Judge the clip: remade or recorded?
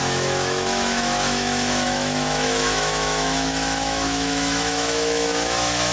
remade